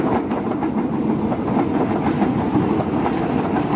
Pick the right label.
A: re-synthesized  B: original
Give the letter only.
B